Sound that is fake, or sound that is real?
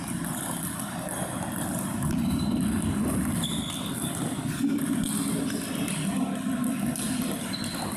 real